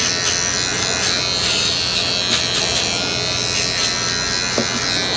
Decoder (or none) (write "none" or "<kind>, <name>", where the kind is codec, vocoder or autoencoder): none